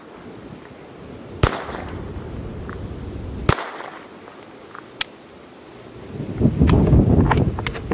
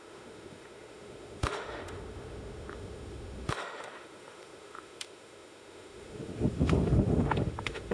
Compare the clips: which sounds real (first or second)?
first